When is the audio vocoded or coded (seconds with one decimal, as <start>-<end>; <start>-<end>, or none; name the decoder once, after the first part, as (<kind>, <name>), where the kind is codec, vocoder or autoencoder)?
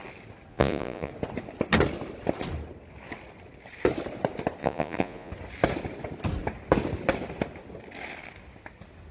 0.5-1.1 (vocoder, Vocos); 4.6-5.3